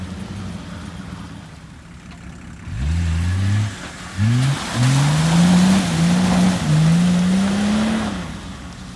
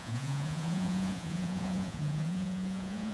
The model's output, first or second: second